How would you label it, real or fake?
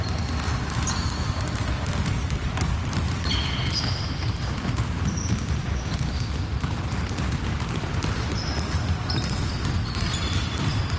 real